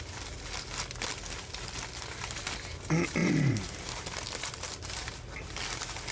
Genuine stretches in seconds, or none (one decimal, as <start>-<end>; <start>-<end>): 0.0-3.2; 4.4-6.1